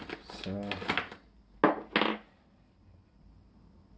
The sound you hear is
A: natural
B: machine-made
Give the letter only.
A